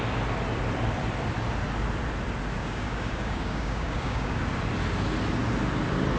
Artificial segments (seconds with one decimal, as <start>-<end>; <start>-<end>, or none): 2.6-4.4

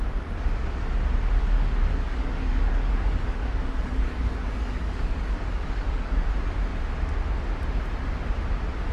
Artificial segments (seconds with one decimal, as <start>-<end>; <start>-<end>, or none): 1.4-6.3

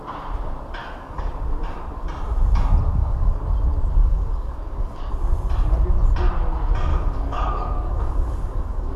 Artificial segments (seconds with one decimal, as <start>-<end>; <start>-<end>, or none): 0.8-1.3; 2.9-3.4; 4.0-5.1; 6.9-9.0